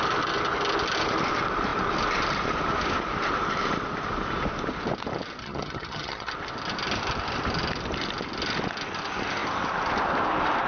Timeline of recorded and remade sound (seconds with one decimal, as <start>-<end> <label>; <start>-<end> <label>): 0.0-5.4 recorded; 5.4-6.3 remade; 6.3-10.7 recorded